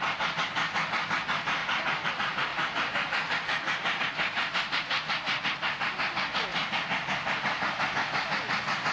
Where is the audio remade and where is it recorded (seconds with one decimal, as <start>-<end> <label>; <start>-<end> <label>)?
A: 0.0-1.6 recorded; 1.6-2.1 remade; 2.1-2.5 recorded; 2.5-4.0 remade; 4.0-6.5 recorded; 6.5-7.8 remade; 7.8-8.9 recorded